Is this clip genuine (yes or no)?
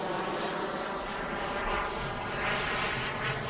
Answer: yes